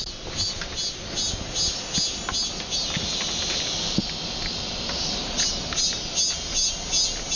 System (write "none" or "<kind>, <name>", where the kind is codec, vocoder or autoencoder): none